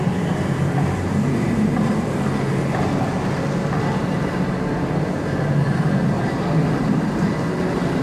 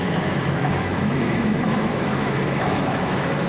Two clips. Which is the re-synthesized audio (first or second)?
second